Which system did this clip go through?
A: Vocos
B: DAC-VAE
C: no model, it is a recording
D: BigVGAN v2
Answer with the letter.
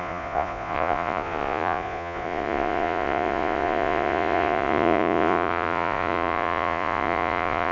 A